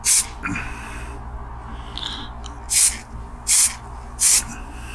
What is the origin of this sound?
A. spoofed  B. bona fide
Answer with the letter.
B